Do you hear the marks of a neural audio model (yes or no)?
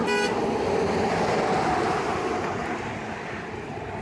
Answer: no